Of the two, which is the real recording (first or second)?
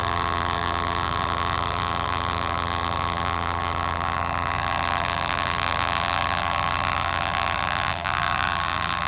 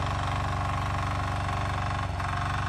second